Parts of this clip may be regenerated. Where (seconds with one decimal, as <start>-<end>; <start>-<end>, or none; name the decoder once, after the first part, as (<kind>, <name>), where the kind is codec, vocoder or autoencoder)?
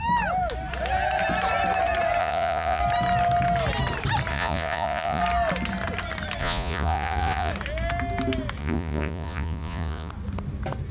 2.2-2.8 (vocoder, Vocos); 4.3-5.2; 6.4-7.5; 8.6-10.1